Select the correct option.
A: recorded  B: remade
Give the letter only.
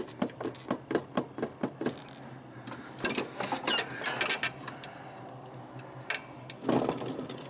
A